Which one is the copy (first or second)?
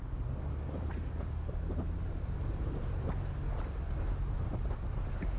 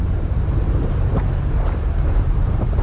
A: second